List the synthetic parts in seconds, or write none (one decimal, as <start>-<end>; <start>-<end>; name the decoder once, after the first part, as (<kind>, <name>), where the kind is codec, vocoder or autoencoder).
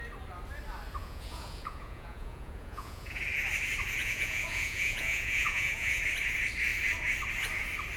1.0-3.2 (vocoder, Vocos); 4.0-6.0